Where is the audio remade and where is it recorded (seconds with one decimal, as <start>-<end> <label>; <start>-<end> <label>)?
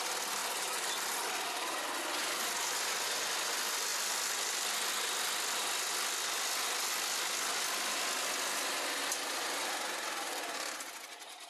0.0-11.5 recorded